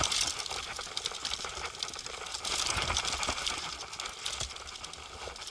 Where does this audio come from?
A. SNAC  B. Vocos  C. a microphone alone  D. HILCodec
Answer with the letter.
C